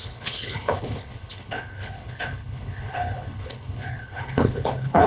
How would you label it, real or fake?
fake